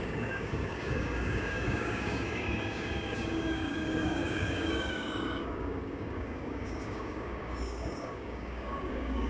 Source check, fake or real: fake